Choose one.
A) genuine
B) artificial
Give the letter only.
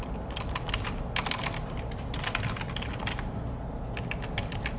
A